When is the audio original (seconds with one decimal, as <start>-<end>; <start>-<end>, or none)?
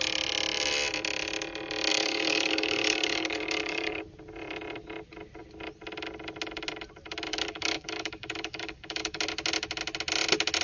0.0-1.9; 4.0-7.3; 9.2-10.6